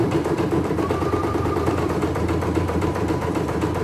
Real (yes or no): no